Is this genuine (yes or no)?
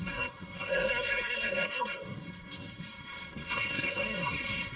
no